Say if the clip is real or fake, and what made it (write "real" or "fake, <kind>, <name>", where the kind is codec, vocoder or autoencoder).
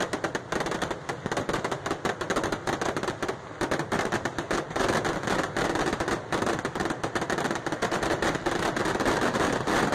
real